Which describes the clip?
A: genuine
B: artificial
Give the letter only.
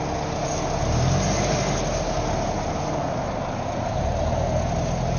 A